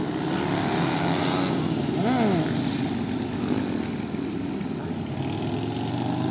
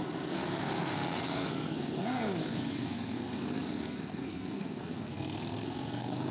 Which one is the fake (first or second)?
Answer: second